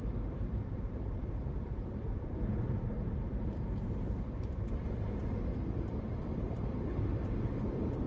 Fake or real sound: fake